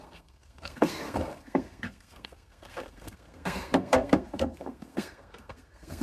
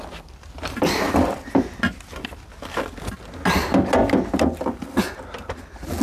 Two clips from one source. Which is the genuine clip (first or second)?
second